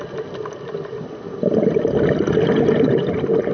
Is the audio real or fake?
real